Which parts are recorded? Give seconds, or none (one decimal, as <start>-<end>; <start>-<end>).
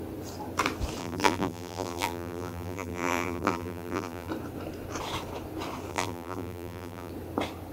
0.0-1.0; 4.3-5.9; 7.1-7.7